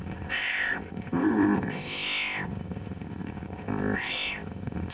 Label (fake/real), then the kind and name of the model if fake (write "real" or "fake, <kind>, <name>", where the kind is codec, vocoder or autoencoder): fake, codec, ZipCodec